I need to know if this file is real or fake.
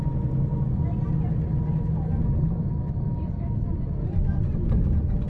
real